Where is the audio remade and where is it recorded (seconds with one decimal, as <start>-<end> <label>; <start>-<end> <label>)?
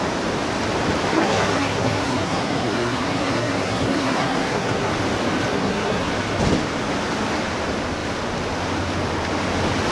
0.0-1.1 recorded; 1.1-4.9 remade; 4.9-5.5 recorded; 5.5-6.1 remade; 6.1-9.9 recorded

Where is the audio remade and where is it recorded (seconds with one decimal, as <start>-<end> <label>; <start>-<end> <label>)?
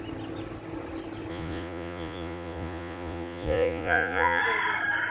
0.0-1.3 recorded; 1.3-4.4 remade; 4.4-5.1 recorded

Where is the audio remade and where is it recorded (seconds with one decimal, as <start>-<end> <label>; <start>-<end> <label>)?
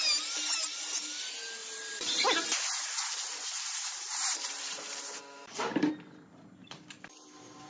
0.0-1.6 recorded; 1.6-5.9 remade; 5.9-6.6 recorded; 6.6-7.7 remade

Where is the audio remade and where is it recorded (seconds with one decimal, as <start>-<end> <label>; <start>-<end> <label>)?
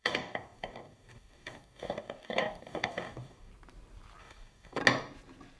0.0-3.5 remade; 3.5-4.2 recorded; 4.2-4.8 remade; 4.8-5.6 recorded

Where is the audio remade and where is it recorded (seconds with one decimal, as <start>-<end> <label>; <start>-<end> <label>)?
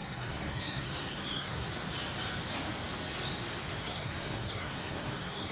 0.0-1.7 remade; 1.7-3.8 recorded; 3.8-5.5 remade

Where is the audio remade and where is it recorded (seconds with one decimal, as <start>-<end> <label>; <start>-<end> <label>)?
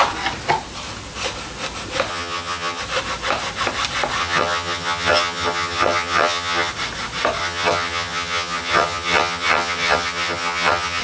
0.0-2.1 recorded; 2.1-2.8 remade; 2.8-4.2 recorded; 4.2-6.7 remade; 6.7-7.4 recorded; 7.4-11.0 remade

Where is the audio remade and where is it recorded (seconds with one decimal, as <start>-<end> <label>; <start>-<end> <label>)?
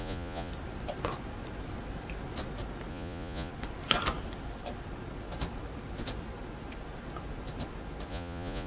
0.0-0.5 remade; 0.5-2.9 recorded; 2.9-3.5 remade; 3.5-8.1 recorded; 8.1-8.7 remade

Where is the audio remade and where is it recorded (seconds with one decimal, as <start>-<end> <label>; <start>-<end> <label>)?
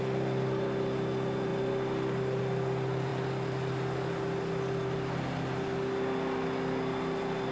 0.0-7.5 recorded